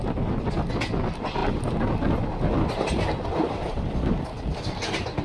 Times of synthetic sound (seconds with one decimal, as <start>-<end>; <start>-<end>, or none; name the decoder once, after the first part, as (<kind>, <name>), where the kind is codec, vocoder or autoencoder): none

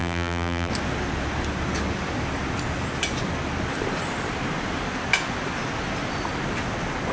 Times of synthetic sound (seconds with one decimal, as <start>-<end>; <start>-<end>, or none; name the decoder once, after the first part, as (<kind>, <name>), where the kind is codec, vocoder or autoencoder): 0.0-0.7 (vocoder, BigVGAN v2)